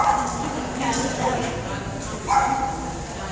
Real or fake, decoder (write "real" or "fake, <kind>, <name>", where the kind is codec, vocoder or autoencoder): real